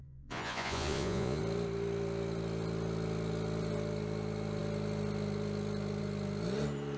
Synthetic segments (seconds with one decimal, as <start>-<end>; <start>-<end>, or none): 0.0-1.4